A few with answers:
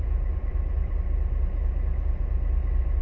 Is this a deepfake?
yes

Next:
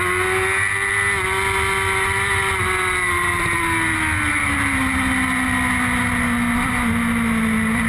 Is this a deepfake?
no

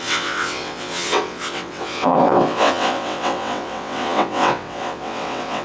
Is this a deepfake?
yes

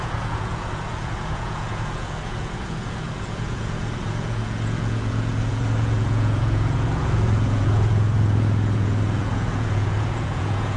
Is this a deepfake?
yes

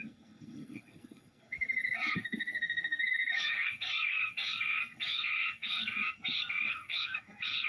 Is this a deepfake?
yes